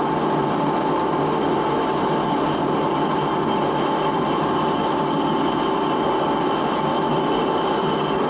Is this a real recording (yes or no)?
yes